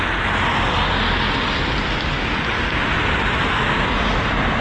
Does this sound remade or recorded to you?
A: recorded